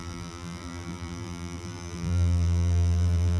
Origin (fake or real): fake